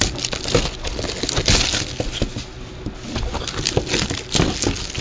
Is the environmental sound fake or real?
real